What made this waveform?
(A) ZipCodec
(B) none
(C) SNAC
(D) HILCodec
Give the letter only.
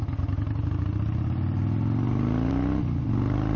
B